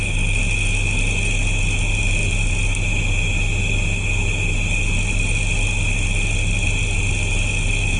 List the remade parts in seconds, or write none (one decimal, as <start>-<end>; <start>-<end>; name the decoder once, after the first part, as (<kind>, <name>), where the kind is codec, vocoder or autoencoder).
none